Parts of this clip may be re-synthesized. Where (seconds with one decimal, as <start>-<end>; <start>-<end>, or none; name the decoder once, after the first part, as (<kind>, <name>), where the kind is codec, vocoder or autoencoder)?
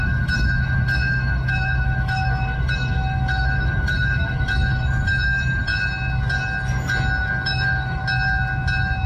0.0-5.7 (autoencoder, DAC-VAE); 7.3-8.0